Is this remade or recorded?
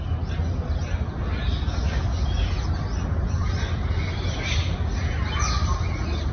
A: recorded